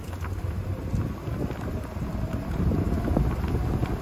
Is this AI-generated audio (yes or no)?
no